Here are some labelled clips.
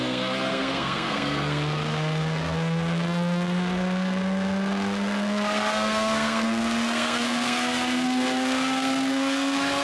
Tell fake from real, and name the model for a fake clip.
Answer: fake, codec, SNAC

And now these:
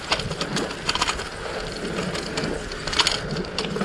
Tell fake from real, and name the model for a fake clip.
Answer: real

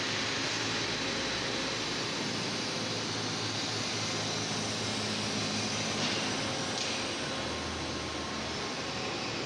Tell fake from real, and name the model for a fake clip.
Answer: real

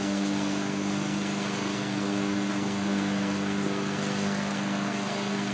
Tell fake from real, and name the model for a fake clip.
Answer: fake, codec, SNAC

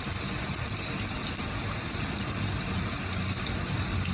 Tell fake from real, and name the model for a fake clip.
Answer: real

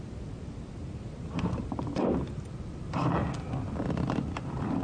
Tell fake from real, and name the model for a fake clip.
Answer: real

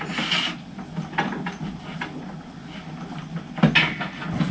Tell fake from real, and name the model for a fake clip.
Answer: real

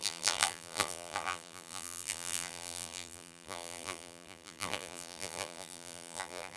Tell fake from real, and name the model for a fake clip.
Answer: fake, vocoder, BigVGAN v2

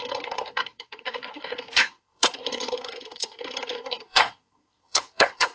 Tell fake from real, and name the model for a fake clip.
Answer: fake, codec, SNAC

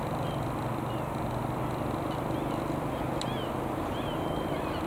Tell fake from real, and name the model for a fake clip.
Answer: real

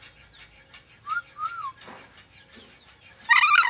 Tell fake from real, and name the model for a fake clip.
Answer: fake, vocoder, BigVGAN v2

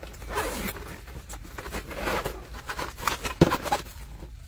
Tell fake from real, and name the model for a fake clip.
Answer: fake, vocoder, BigVGAN v2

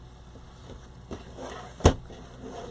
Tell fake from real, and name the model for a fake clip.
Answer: real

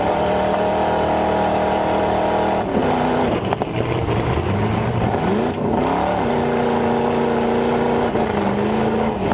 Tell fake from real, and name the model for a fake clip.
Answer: real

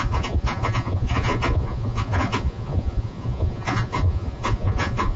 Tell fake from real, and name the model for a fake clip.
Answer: fake, vocoder, Vocos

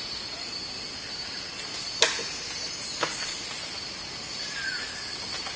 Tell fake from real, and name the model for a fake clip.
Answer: real